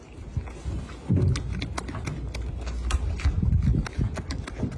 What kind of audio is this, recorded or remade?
recorded